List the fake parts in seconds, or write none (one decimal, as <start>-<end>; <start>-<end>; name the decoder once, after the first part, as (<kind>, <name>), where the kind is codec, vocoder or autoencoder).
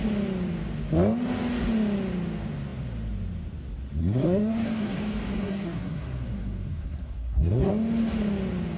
4.0-5.0 (codec, SNAC); 5.4-7.7